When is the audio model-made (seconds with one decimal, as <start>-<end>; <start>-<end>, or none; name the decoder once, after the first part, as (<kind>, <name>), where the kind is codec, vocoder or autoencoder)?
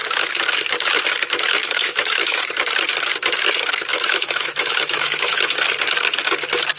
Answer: 1.6-2.4 (autoencoder, DAC-VAE); 3.9-5.6